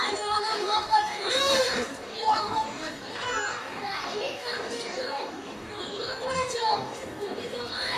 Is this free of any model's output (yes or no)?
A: no